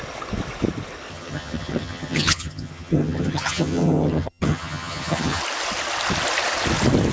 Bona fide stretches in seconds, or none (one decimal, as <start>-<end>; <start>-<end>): 0.0-1.1; 5.4-7.1